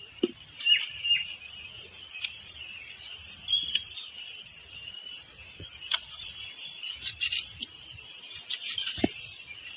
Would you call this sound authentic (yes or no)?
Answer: no